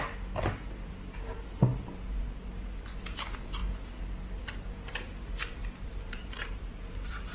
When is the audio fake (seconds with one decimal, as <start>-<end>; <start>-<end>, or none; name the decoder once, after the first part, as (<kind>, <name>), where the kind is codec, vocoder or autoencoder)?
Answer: 5.6-7.3 (vocoder, BigVGAN v2)